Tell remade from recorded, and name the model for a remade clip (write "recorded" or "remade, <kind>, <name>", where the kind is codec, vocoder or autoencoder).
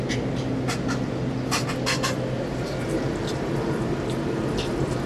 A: recorded